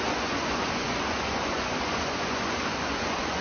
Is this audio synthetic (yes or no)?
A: yes